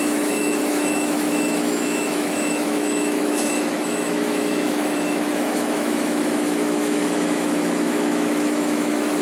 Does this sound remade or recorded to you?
remade